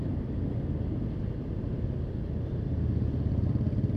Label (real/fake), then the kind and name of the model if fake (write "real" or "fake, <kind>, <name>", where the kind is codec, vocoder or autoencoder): real